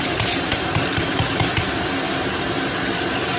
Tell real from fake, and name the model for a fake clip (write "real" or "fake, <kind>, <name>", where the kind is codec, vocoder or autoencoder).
real